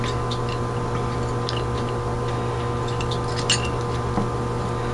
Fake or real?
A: real